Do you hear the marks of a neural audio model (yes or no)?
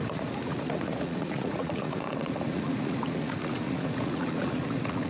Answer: yes